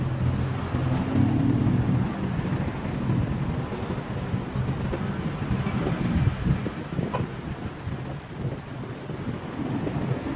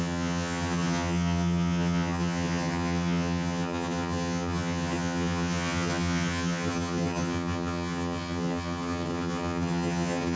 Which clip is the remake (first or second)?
second